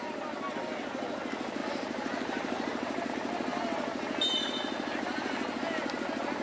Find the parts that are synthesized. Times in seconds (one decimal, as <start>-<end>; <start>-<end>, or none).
1.6-3.1